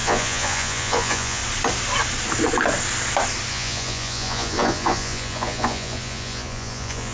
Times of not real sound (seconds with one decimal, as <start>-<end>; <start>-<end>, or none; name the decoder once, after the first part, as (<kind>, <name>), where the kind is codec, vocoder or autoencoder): 0.0-1.4 (vocoder, Vocos); 3.5-7.1